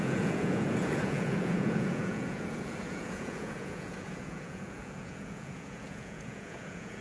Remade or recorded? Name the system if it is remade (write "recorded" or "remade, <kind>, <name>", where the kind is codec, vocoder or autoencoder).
remade, vocoder, Vocos